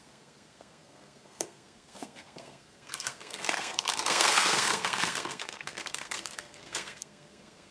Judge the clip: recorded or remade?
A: remade